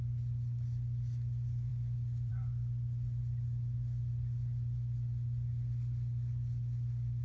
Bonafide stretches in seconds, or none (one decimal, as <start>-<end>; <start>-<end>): 0.0-7.2